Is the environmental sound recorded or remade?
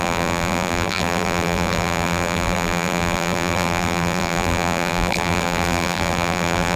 remade